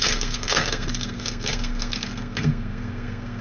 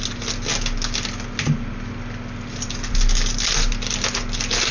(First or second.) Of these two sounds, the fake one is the first